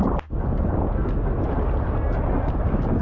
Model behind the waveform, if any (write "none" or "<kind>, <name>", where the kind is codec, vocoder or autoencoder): none